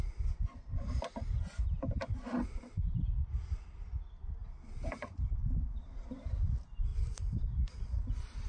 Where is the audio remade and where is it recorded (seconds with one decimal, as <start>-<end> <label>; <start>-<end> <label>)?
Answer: 0.0-2.3 recorded; 2.3-3.0 remade; 3.0-6.9 recorded; 6.9-7.4 remade; 7.4-8.5 recorded